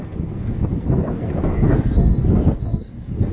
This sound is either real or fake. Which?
fake